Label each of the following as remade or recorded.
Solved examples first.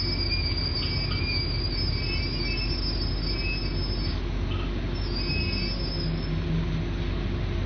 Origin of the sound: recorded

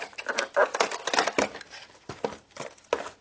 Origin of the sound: recorded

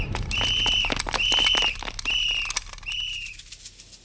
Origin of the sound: recorded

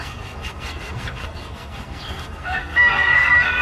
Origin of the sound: remade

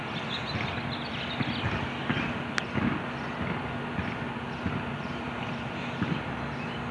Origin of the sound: recorded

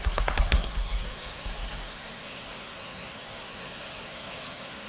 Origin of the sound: remade